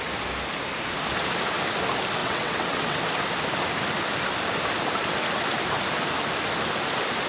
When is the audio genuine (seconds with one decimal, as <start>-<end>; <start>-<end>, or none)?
0.0-2.2; 3.0-7.3